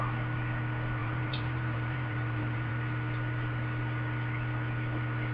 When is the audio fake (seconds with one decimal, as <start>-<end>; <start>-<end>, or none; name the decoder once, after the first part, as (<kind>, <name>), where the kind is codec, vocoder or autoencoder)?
1.0-2.7 (vocoder, BigVGAN v2)